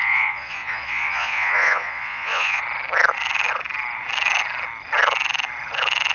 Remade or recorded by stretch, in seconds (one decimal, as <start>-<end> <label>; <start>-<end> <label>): 0.0-2.6 remade; 2.6-6.1 recorded